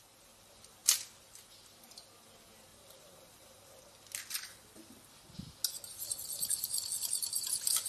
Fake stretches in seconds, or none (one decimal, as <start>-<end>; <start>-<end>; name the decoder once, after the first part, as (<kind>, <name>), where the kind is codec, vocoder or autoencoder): 2.7-3.8 (vocoder, BigVGAN v2)